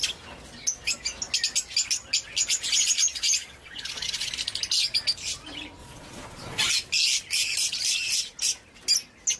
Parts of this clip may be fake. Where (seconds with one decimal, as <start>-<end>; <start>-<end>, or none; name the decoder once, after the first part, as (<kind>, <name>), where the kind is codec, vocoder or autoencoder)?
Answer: 3.1-4.3 (vocoder, Vocos); 5.8-6.7